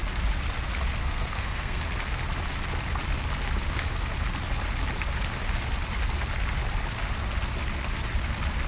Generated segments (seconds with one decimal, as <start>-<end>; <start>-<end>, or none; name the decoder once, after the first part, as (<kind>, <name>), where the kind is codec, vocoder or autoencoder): 1.0-1.8 (codec, SNAC)